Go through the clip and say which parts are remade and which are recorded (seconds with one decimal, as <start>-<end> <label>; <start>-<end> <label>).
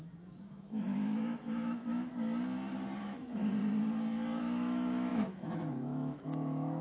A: 0.0-2.1 remade; 2.1-3.0 recorded; 3.0-3.4 remade; 3.4-4.4 recorded; 4.4-6.8 remade